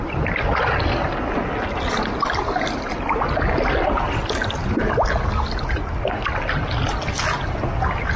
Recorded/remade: recorded